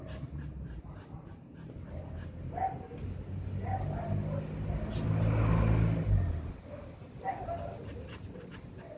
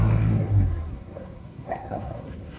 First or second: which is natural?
first